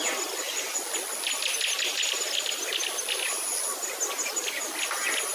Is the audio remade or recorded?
recorded